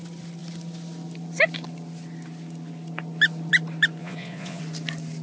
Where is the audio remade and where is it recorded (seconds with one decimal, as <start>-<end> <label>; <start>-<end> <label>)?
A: 0.0-4.0 recorded; 4.0-4.6 remade; 4.6-5.2 recorded